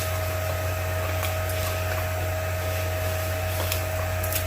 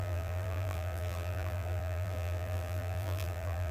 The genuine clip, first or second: first